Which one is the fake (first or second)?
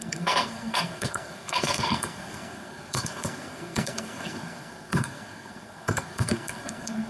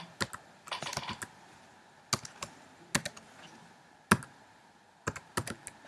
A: first